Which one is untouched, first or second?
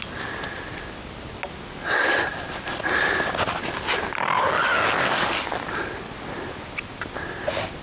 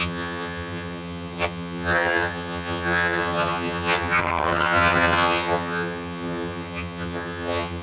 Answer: first